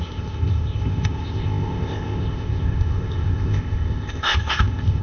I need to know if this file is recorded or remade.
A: remade